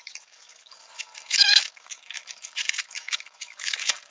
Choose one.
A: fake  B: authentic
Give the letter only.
A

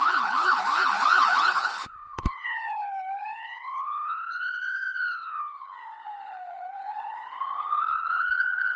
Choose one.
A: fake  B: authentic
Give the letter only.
A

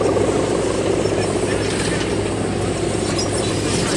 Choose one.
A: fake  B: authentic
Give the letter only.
B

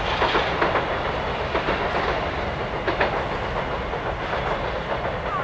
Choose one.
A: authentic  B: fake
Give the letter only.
A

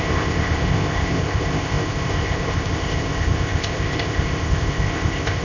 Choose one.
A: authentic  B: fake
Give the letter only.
B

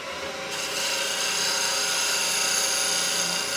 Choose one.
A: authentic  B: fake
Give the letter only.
A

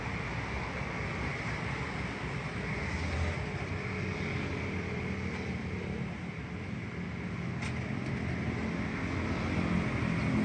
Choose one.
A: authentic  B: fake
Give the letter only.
A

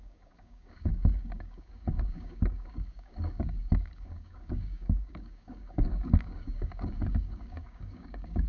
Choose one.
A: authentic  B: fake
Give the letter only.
B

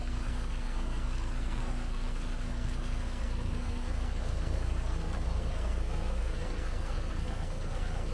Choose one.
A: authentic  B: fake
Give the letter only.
B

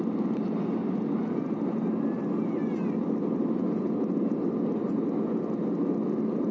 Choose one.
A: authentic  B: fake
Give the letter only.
A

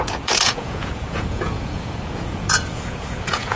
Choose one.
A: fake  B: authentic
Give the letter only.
A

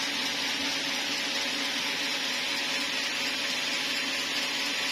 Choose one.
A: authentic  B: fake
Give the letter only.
A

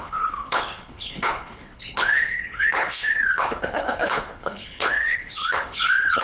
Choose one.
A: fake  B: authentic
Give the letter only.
A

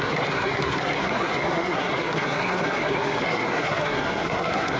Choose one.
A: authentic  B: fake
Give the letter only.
B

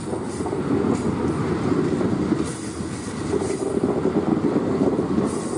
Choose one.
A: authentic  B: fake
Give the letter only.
A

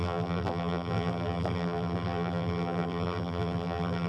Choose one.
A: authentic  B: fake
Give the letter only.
B